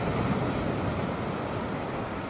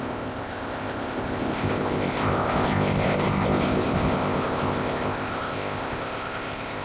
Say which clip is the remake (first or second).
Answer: second